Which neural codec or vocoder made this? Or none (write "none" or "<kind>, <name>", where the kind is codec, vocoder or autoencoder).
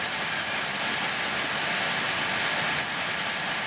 none